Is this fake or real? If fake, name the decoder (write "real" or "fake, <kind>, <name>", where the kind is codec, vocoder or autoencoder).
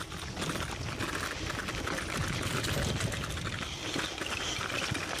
real